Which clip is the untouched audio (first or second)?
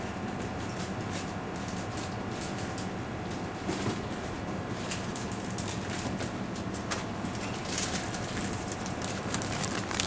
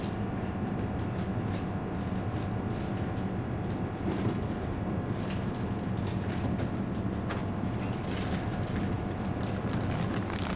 second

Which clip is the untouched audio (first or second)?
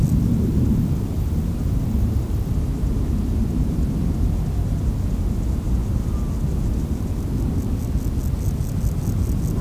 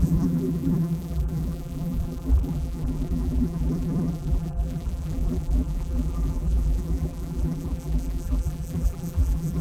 first